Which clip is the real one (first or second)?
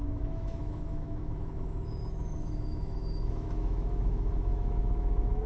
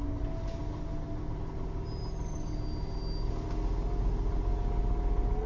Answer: second